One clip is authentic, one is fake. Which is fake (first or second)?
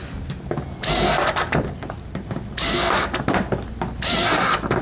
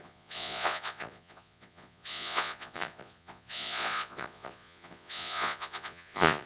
second